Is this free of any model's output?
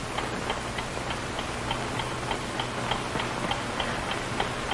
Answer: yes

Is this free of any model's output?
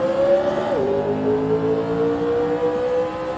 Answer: yes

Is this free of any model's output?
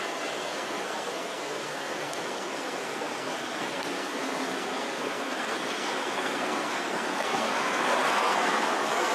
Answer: no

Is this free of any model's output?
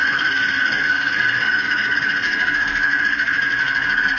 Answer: no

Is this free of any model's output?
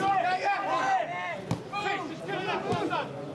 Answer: yes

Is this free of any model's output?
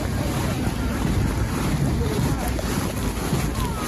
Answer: yes